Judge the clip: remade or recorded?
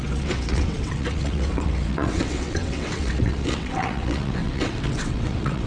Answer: remade